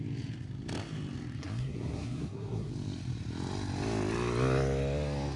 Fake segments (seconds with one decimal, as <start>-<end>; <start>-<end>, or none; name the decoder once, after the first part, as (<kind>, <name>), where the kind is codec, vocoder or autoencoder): 1.4-2.7 (codec, SNAC)